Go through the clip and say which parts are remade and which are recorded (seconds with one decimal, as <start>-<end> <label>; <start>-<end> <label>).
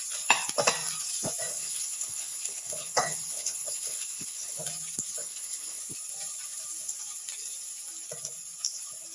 0.0-1.5 recorded; 1.5-4.6 remade; 4.6-5.2 recorded; 5.2-5.8 remade; 5.8-9.1 recorded